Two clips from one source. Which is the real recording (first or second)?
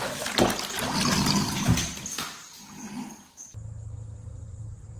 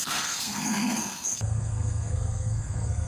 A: first